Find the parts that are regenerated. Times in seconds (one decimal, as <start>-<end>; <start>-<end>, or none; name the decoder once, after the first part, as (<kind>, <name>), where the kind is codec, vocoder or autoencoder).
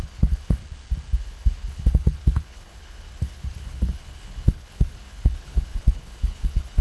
0.0-0.6 (codec, HILCodec); 1.2-6.8